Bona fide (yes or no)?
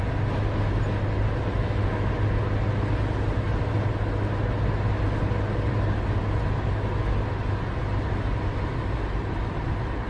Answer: yes